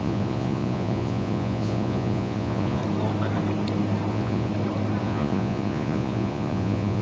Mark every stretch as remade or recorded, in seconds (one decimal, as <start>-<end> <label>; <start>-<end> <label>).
0.0-2.8 remade; 2.8-4.1 recorded; 4.1-4.5 remade; 4.5-5.0 recorded; 5.0-7.0 remade